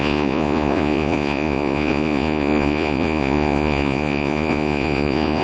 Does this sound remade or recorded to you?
remade